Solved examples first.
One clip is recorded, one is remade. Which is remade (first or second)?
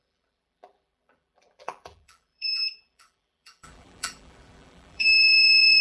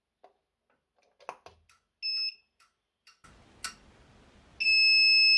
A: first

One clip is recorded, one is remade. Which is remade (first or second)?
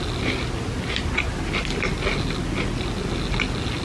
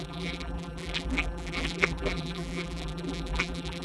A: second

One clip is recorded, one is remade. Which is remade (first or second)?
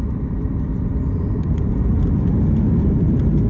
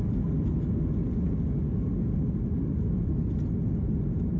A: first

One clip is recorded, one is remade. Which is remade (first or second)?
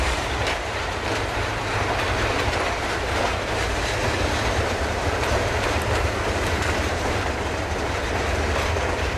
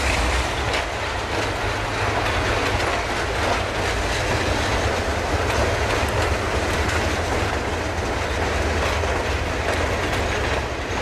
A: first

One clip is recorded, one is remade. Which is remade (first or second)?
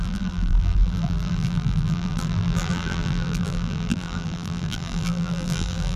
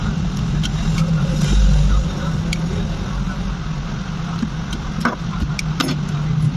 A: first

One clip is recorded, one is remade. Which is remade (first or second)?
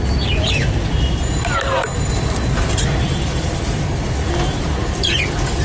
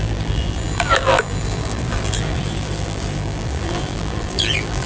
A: second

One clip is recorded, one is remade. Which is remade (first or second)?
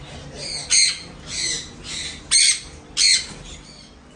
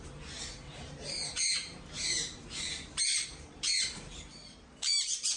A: second